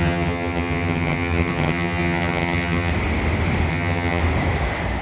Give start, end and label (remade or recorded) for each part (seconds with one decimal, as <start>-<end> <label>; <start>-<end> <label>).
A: 0.0-2.9 remade; 2.9-3.7 recorded; 3.7-4.2 remade; 4.2-5.0 recorded